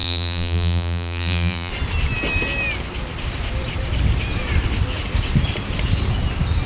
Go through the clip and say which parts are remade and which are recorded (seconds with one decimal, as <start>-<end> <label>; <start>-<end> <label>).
0.0-1.7 remade; 1.7-6.7 recorded